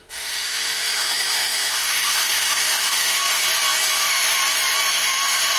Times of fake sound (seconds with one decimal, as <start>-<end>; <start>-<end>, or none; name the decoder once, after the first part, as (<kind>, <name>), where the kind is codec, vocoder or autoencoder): 0.0-3.4 (autoencoder, DAC-VAE); 4.0-4.4; 4.9-5.6